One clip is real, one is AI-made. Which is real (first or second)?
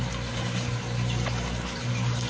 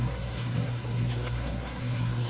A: first